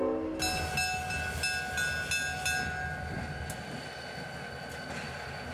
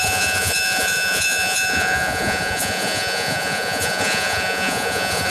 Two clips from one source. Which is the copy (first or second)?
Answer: second